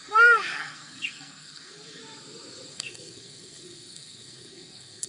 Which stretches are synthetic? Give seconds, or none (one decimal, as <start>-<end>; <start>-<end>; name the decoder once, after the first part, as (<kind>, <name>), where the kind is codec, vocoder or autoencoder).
0.0-2.0 (codec, SNAC); 2.7-5.1